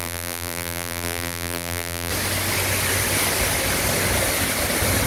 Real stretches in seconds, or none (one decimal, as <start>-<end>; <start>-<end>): 2.1-5.1

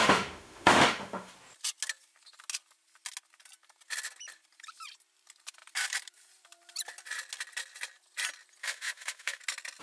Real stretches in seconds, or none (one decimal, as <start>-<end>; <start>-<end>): 1.3-8.6; 9.4-9.8

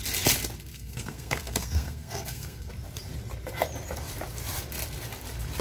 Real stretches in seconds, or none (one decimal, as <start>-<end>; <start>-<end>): 0.0-0.7; 2.7-5.6

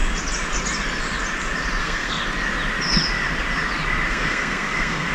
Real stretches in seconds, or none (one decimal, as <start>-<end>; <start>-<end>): 0.0-1.8; 2.2-4.1

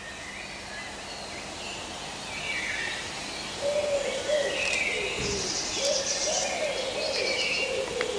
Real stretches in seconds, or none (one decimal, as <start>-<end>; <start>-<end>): 0.0-8.2

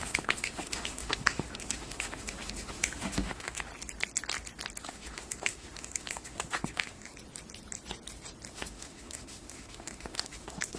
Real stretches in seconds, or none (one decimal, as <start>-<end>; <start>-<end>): 3.7-4.8; 7.1-8.5